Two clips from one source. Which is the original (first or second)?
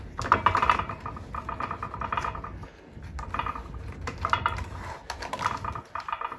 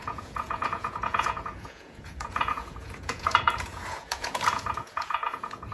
first